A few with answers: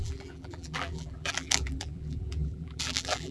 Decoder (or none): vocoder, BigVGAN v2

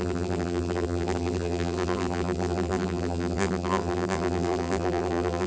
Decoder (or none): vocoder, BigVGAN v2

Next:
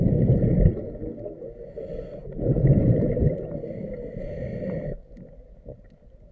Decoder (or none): none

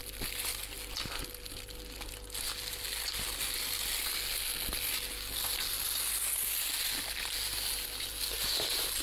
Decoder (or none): none